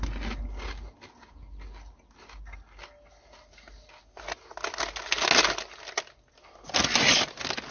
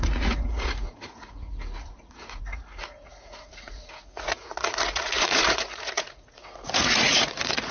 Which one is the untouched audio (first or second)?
first